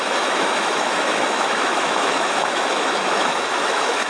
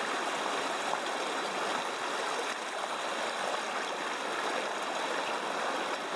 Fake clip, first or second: first